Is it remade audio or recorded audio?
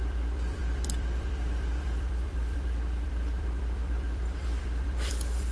remade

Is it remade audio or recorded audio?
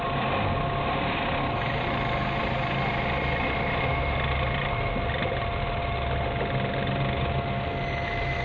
recorded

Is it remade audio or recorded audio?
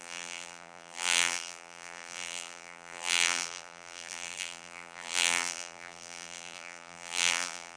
remade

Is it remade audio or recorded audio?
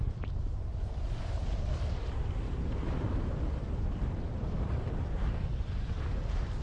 remade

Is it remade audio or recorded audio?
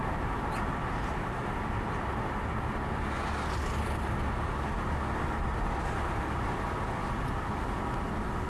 recorded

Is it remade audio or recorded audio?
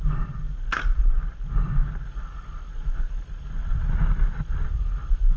recorded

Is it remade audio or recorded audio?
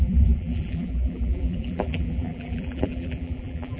remade